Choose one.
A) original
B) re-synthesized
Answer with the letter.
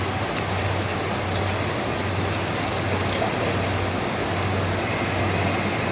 A